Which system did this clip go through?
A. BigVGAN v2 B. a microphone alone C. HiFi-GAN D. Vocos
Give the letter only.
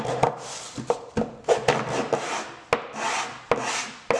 B